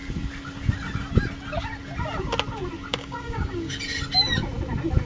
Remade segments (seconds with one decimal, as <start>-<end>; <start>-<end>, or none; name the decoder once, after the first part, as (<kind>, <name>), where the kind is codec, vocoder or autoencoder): 2.9-3.7 (codec, DAC)